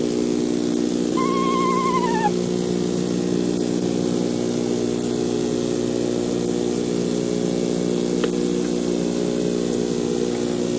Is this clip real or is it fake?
real